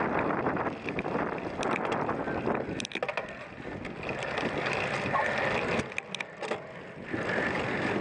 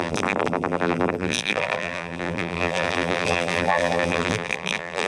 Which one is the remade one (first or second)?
second